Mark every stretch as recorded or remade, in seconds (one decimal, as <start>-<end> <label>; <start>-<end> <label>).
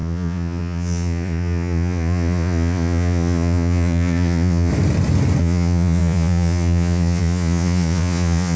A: 0.0-4.7 remade; 4.7-5.4 recorded; 5.4-8.6 remade